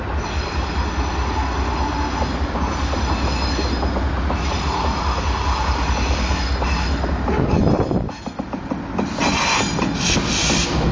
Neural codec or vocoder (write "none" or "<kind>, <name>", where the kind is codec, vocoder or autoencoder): none